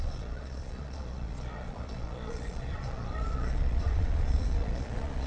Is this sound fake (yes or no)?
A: yes